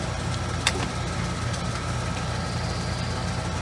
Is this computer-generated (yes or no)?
no